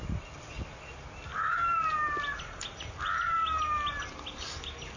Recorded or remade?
recorded